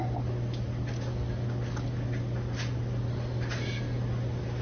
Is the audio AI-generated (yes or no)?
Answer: no